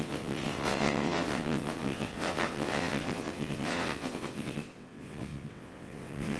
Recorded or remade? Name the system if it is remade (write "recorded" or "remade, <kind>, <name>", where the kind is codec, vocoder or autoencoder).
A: remade, vocoder, WaveNeXt